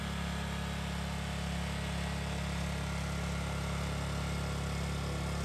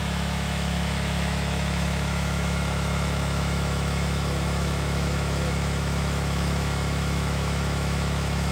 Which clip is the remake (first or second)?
second